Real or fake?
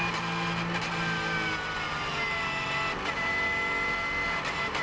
real